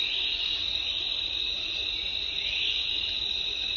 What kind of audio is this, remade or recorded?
recorded